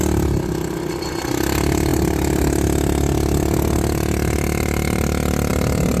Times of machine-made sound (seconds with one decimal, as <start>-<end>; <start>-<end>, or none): none